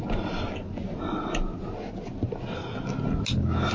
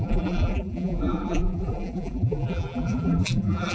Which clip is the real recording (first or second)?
first